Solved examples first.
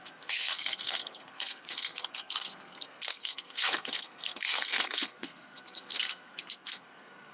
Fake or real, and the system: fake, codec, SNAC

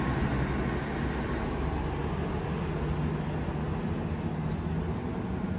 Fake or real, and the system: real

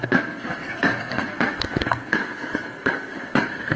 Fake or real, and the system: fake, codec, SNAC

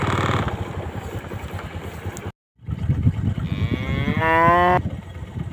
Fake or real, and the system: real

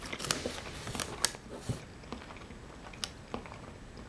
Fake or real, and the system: real